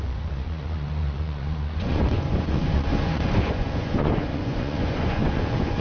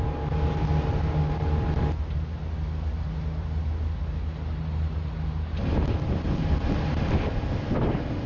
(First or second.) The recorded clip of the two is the second